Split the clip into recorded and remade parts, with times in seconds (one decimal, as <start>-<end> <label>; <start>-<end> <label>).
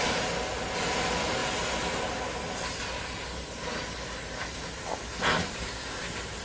0.0-6.4 recorded